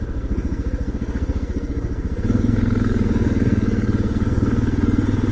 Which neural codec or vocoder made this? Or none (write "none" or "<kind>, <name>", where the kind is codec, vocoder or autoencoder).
codec, SNAC